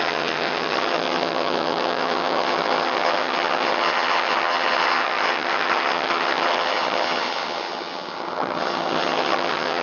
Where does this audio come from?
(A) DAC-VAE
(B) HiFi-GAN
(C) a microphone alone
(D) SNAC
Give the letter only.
B